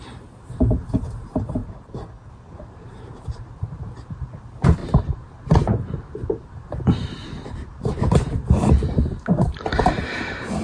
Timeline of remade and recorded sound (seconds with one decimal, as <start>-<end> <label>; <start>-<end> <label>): 0.0-1.6 remade; 1.6-2.3 recorded; 2.3-10.6 remade